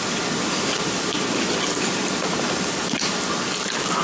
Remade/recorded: recorded